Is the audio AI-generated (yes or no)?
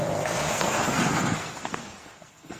yes